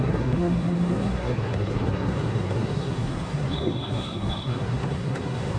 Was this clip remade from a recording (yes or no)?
yes